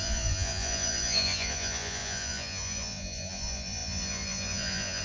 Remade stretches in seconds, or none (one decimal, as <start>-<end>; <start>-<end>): 0.0-5.0